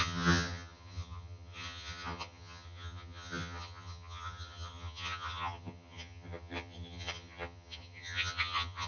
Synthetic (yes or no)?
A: yes